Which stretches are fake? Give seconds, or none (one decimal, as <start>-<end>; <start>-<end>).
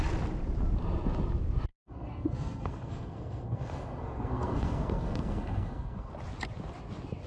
1.7-6.1